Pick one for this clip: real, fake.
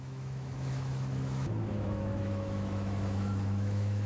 fake